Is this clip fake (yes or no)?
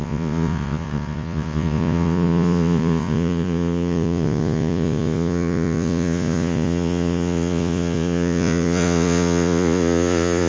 yes